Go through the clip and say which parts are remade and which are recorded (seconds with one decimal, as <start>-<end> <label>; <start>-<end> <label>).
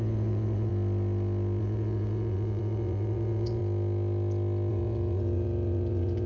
0.0-0.7 remade; 0.7-1.6 recorded; 1.6-3.6 remade; 3.6-4.7 recorded; 4.7-6.3 remade